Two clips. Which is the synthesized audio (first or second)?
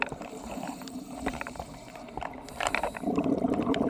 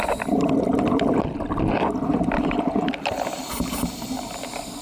first